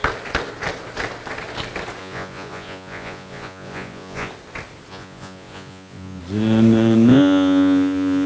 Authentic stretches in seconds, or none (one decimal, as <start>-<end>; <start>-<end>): 0.0-2.0; 4.3-4.9; 6.2-7.1